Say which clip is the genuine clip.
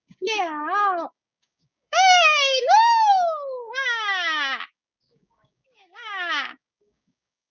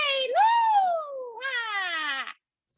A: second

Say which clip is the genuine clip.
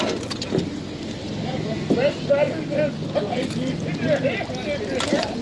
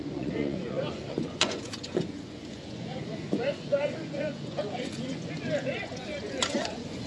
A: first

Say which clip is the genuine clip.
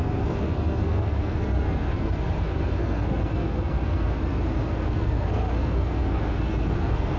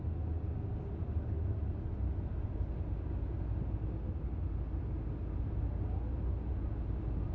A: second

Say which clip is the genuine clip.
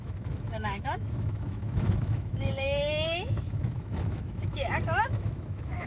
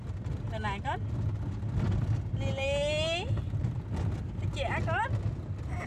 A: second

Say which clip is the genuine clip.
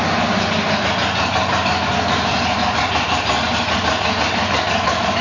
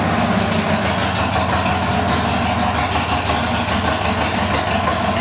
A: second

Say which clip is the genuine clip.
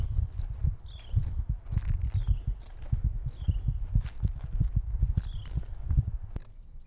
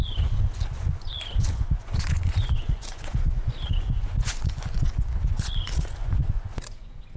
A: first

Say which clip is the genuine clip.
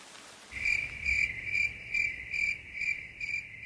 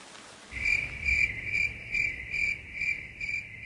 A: second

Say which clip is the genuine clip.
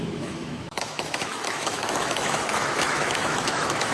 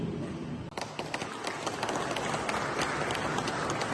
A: second